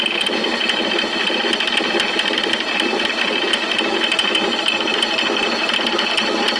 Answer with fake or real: real